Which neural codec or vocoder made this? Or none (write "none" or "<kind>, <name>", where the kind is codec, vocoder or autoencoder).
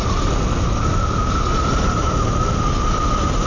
none